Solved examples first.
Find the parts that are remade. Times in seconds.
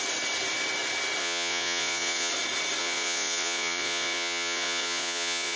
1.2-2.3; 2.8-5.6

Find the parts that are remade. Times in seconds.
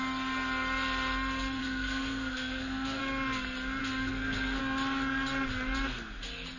1.6-3.0; 3.8-4.6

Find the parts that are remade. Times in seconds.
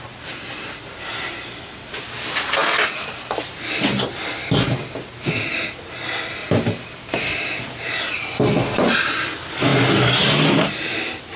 none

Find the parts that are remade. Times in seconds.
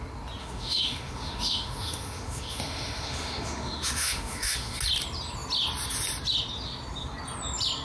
0.4-4.8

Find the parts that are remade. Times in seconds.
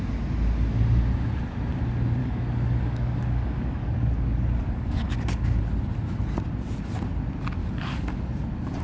2.2-5.6; 7.6-8.2